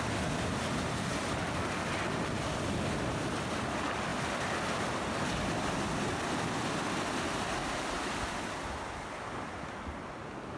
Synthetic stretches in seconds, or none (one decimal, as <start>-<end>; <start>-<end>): none